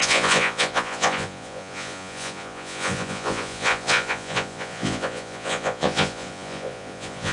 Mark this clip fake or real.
fake